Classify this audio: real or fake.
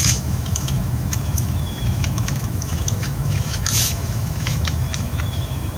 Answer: fake